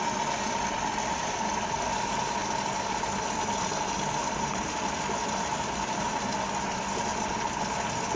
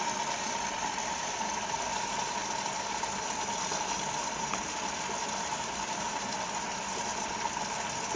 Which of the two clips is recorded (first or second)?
first